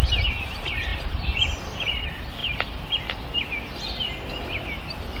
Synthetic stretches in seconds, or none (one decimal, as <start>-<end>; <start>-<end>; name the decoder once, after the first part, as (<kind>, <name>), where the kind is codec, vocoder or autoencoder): 0.9-1.9 (vocoder, BigVGAN v2); 2.4-2.9